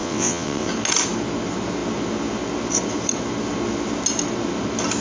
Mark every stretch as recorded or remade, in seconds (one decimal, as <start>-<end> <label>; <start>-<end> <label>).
0.0-0.7 remade; 0.7-5.0 recorded